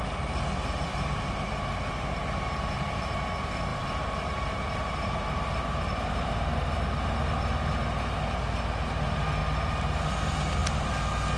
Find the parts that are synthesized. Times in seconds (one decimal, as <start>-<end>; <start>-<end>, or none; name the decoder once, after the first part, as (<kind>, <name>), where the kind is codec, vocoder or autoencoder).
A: 0.9-3.1 (vocoder, BigVGAN v2); 3.7-5.8